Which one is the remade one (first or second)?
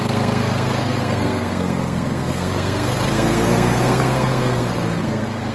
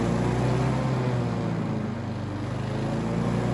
first